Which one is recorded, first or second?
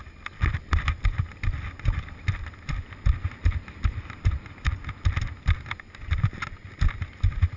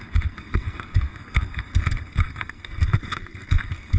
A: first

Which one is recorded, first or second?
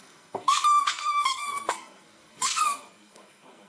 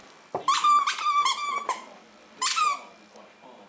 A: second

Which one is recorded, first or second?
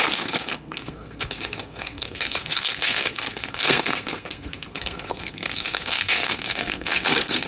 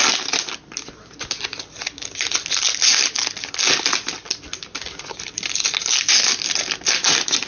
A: second